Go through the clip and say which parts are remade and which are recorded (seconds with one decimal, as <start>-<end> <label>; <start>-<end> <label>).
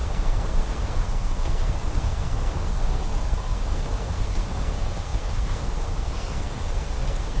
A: 0.0-7.4 remade